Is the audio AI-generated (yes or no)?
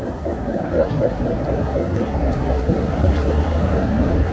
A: yes